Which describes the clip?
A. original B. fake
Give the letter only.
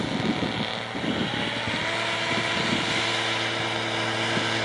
A